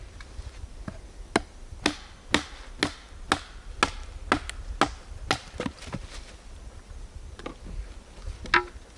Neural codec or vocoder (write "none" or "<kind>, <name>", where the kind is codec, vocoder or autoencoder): none